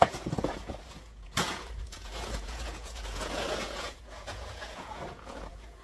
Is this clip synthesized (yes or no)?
yes